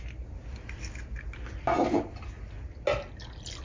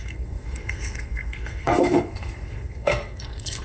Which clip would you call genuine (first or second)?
first